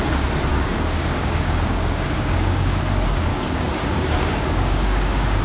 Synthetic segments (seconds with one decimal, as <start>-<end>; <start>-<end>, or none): 0.5-2.8; 3.3-5.4